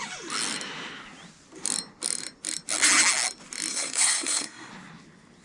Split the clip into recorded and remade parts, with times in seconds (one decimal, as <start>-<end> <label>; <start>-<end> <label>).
0.0-3.7 recorded; 3.7-4.7 remade; 4.7-5.4 recorded